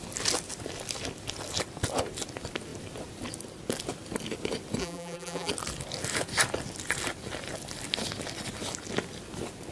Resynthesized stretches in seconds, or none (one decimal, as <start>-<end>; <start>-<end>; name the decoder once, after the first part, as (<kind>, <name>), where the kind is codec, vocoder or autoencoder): 4.8-5.5 (vocoder, BigVGAN v2)

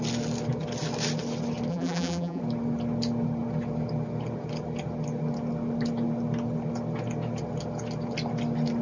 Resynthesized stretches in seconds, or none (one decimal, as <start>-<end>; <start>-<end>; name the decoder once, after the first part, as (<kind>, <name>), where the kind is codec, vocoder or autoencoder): 1.7-2.4 (vocoder, BigVGAN v2)

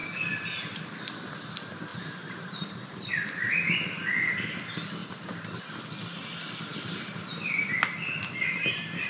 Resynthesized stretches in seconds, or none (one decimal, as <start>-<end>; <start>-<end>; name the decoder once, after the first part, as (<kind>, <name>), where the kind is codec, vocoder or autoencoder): 1.9-4.1 (vocoder, BigVGAN v2); 5.0-5.6

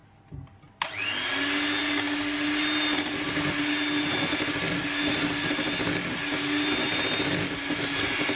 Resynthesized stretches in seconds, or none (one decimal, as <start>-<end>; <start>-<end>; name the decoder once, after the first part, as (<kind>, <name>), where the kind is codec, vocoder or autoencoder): none